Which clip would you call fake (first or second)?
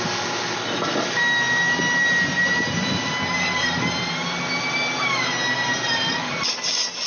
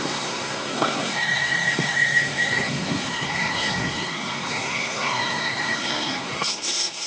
second